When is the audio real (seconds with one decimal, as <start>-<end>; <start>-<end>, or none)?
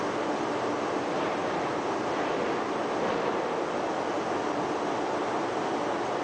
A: 0.0-6.2